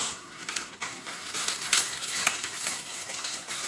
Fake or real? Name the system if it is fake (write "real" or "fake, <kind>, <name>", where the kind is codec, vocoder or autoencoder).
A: fake, codec, SNAC